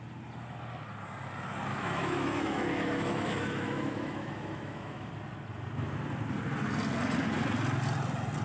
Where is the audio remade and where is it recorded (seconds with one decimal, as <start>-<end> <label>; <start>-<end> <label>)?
0.0-1.7 recorded; 1.7-5.1 remade; 5.1-8.4 recorded